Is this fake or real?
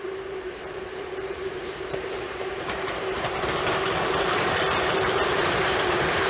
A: fake